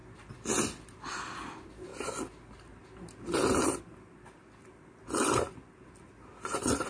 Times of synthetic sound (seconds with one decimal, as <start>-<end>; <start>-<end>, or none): none